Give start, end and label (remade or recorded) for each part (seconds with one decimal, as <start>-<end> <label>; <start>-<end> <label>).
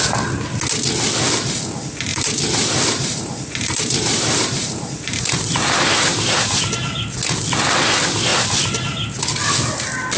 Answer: 0.0-2.1 recorded; 2.1-6.6 remade; 6.6-10.2 recorded